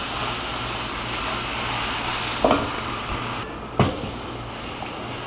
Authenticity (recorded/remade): recorded